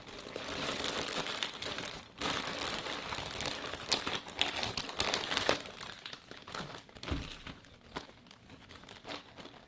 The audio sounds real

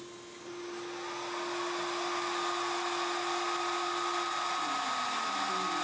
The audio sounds real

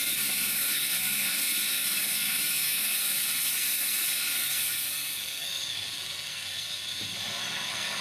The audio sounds fake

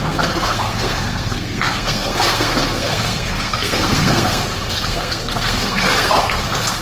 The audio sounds fake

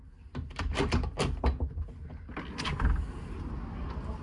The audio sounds real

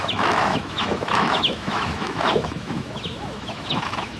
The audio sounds fake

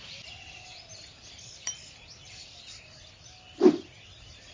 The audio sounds real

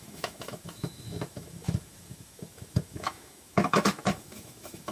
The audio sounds fake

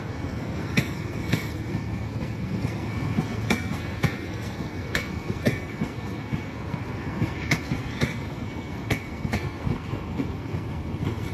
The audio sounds fake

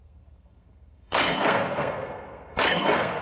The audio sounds fake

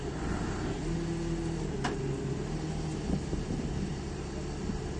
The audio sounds real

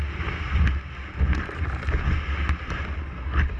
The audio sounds real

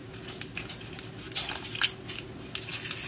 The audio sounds real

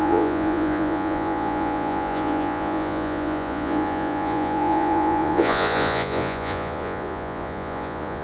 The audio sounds fake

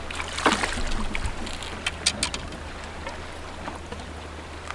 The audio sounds real